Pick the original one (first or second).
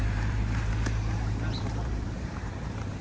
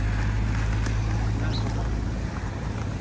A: second